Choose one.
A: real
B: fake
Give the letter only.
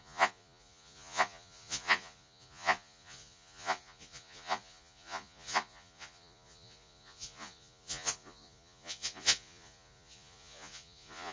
B